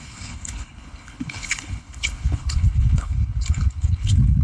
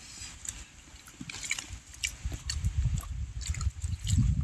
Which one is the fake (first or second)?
first